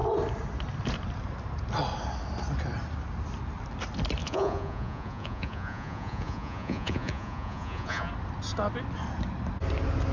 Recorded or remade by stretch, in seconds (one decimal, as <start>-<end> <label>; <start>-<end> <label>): 0.0-4.2 recorded; 4.2-8.1 remade; 8.1-10.1 recorded